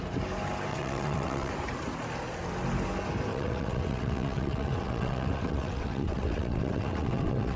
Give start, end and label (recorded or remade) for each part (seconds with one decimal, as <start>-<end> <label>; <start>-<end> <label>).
0.0-0.7 recorded; 0.7-1.5 remade; 1.5-3.3 recorded; 3.3-7.6 remade